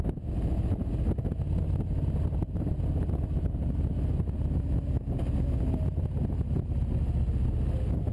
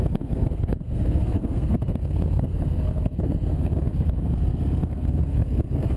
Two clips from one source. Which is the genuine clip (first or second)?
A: first